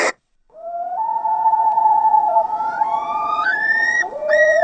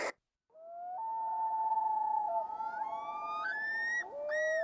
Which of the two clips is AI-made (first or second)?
first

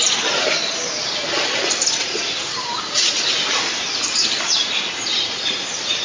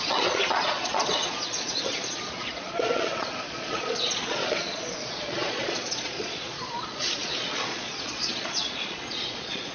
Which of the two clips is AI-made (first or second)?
second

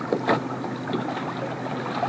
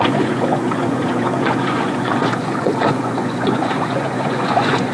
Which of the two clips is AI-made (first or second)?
second